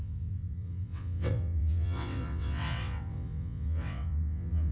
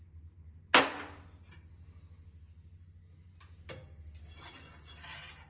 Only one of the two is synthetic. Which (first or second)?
first